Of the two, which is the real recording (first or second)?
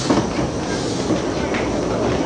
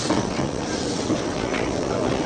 first